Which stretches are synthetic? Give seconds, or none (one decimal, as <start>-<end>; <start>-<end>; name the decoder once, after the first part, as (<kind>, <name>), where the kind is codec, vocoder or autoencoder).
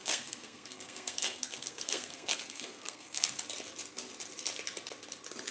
0.0-3.3 (codec, SNAC)